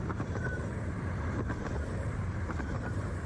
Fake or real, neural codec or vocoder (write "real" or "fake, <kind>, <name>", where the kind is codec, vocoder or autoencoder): fake, vocoder, BigVGAN v2